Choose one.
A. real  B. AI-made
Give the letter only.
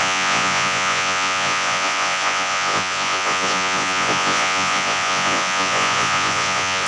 B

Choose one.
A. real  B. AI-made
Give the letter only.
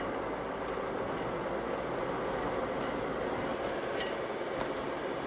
A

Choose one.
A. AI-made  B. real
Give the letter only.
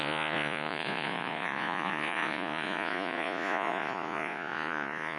A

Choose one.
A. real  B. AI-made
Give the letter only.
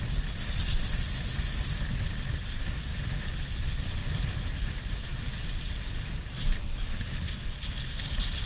A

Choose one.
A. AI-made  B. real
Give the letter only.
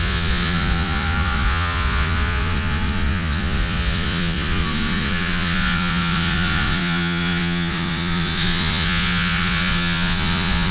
A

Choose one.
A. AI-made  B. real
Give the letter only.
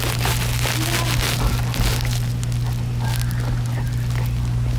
B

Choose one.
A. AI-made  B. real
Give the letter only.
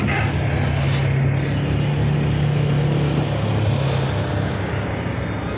B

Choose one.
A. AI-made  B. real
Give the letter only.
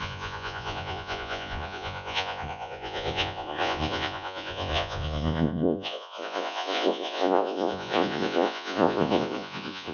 A